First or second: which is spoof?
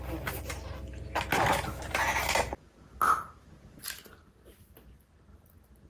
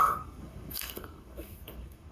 second